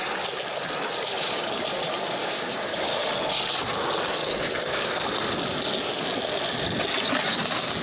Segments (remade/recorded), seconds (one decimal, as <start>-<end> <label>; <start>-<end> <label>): 0.0-1.1 recorded; 1.1-1.6 remade; 1.6-2.2 recorded; 2.2-3.0 remade; 3.0-7.8 recorded